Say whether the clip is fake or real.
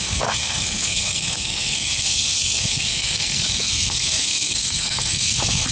fake